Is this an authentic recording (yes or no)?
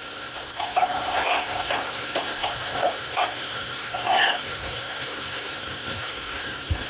no